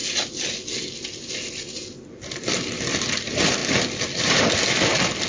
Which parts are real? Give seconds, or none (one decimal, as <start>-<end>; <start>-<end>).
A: 0.0-5.3